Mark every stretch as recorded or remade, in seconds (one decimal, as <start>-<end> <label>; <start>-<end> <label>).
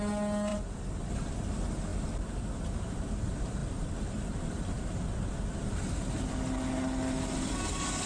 0.0-0.5 recorded; 0.5-1.1 remade; 1.1-3.6 recorded; 3.6-5.0 remade; 5.0-8.1 recorded